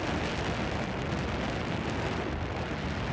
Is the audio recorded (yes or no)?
yes